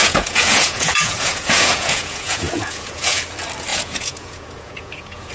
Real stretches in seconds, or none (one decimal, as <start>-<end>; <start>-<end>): 3.2-3.7